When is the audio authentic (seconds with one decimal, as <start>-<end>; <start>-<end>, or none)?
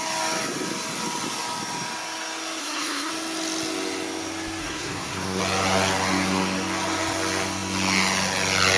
0.0-2.6; 3.1-4.6; 5.4-8.8